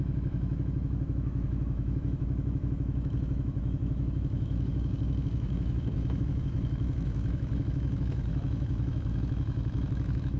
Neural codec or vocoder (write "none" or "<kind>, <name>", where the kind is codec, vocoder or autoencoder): autoencoder, DAC-VAE